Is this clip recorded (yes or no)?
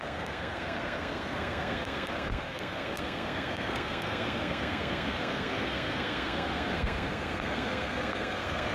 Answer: no